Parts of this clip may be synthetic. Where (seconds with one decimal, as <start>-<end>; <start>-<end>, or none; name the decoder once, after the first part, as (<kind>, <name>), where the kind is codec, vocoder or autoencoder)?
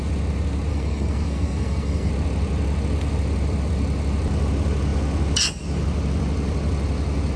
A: 0.7-2.1 (codec, SNAC)